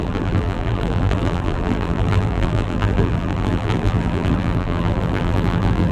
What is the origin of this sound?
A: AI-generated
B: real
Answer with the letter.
A